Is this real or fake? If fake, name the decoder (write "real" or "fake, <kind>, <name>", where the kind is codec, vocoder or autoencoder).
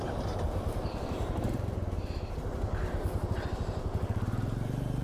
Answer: fake, vocoder, BigVGAN v2